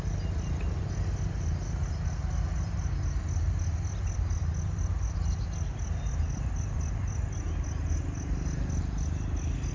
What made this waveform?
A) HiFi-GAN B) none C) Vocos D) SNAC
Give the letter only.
B